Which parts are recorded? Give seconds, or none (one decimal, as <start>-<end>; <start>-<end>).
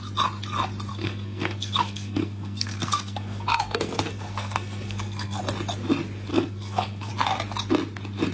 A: 0.0-0.9; 5.4-6.3; 7.1-8.3